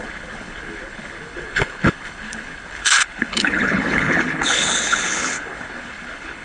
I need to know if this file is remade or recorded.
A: remade